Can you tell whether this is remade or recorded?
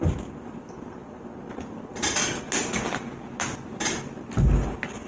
recorded